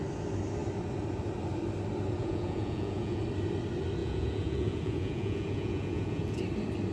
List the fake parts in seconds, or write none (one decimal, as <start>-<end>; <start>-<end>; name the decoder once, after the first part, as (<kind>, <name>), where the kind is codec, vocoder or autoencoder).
2.2-3.2 (vocoder, Vocos); 4.0-6.4